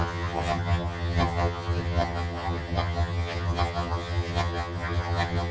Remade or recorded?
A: remade